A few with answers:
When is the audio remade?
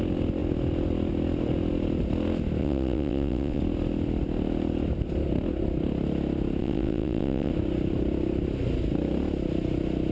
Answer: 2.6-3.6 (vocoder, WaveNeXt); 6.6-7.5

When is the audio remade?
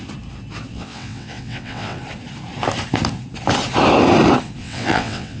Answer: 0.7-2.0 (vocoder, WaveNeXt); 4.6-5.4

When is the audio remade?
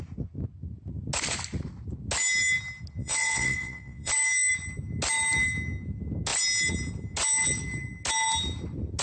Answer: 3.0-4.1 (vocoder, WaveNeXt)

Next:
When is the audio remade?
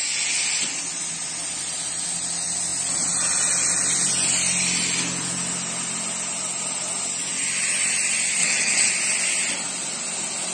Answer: 8.4-8.9 (vocoder, WaveNeXt)